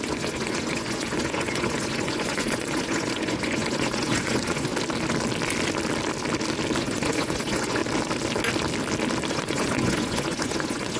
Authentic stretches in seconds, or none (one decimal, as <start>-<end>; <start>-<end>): 4.7-6.8; 7.8-9.3

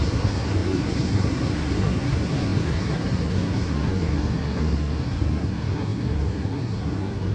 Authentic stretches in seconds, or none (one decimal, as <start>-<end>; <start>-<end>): none

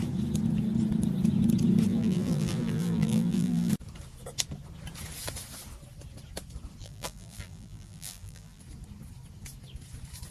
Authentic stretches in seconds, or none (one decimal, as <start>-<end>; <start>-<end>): 0.0-1.9; 3.7-6.8; 8.6-10.3